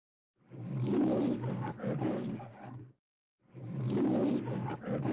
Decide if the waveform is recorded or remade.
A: remade